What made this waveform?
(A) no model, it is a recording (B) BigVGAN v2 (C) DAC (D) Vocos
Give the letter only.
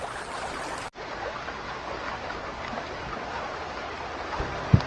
A